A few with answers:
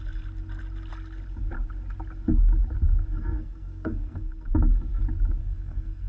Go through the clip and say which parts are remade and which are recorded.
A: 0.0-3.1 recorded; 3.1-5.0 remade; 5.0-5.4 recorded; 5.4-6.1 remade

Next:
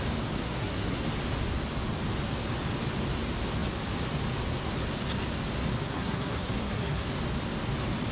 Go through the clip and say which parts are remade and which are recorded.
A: 0.0-0.4 recorded; 0.4-1.0 remade; 1.0-5.8 recorded; 5.8-7.1 remade; 7.1-8.1 recorded